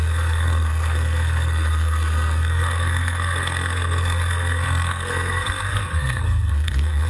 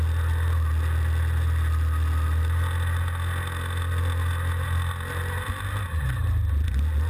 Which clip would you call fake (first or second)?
first